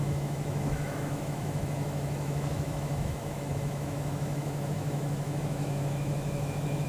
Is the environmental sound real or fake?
fake